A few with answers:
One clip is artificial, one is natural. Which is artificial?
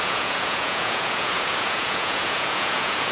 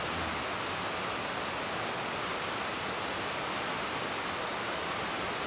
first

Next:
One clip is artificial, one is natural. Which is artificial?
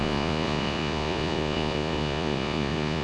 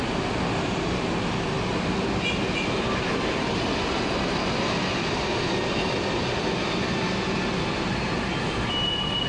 first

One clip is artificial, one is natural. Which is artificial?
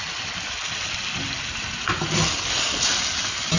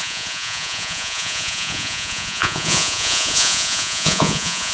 second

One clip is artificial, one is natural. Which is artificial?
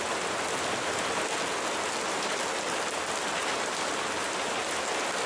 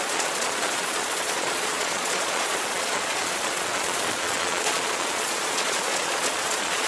second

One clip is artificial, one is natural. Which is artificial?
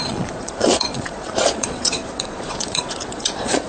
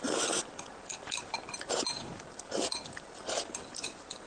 first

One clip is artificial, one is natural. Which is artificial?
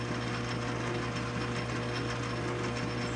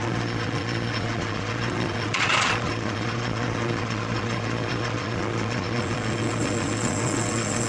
second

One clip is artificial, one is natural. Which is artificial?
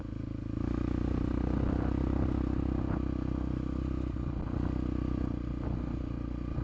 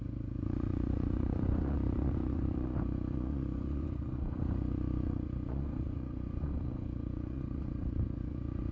second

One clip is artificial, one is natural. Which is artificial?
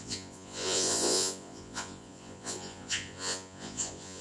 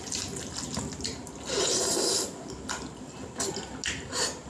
first